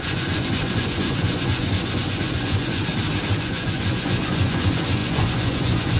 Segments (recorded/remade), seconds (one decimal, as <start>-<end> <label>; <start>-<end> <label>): 0.0-2.9 remade; 2.9-3.4 recorded; 3.4-6.0 remade